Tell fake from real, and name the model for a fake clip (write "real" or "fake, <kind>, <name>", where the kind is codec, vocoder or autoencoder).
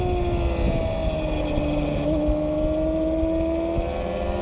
real